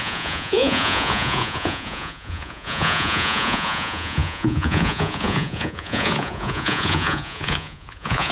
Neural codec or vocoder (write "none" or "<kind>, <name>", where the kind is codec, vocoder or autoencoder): vocoder, Vocos